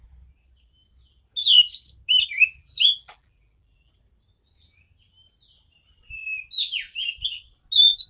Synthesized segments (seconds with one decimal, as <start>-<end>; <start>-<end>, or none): 2.6-3.9